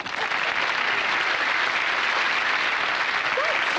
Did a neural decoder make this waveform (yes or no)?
no